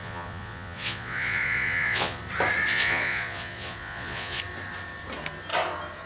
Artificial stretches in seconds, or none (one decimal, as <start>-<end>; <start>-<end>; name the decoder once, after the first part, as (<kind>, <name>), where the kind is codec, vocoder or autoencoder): 0.0-2.2 (vocoder, Vocos); 2.7-4.4